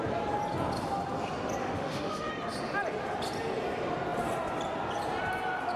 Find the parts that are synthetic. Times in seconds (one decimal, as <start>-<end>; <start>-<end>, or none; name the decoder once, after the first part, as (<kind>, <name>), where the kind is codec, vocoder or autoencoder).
1.6-2.3 (autoencoder, DAC-VAE)